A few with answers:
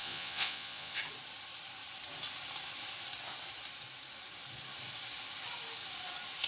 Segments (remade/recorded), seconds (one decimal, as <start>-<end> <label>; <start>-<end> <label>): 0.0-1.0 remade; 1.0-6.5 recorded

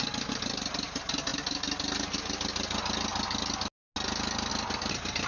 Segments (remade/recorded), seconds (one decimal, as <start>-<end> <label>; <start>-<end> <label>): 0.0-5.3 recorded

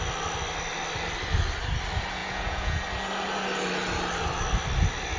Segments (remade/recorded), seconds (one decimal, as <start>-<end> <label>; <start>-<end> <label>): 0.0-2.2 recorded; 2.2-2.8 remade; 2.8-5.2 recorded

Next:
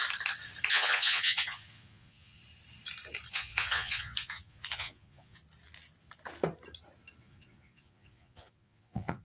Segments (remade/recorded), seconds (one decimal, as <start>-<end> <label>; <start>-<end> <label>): 0.0-0.7 recorded; 0.7-2.4 remade; 2.4-3.3 recorded; 3.3-5.4 remade; 5.4-7.2 recorded; 7.2-9.2 remade

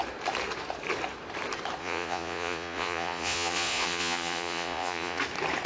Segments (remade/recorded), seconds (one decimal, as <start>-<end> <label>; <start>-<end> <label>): 0.0-1.8 recorded; 1.8-5.2 remade; 5.2-5.7 recorded